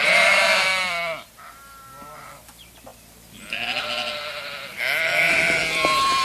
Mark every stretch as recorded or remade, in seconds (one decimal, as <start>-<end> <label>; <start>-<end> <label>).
0.0-0.7 remade; 0.7-1.5 recorded; 1.5-6.2 remade